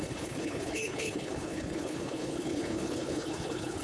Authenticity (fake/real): fake